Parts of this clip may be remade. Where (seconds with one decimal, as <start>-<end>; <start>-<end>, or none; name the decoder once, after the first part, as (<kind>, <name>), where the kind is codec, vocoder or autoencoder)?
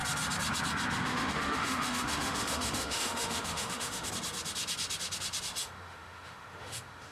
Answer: 1.0-4.1 (autoencoder, DAC-VAE); 5.6-7.1